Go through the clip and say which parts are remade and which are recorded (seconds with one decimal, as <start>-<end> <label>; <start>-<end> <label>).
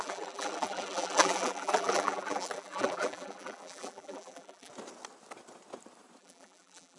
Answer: 0.0-4.7 remade; 4.7-6.2 recorded; 6.2-7.0 remade